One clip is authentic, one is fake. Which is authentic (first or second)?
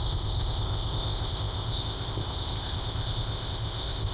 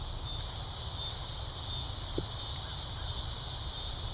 second